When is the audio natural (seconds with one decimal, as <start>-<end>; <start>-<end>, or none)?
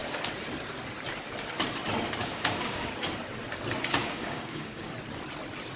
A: 0.0-2.2; 2.9-4.0; 4.9-5.8